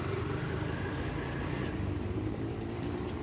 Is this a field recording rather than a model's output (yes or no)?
no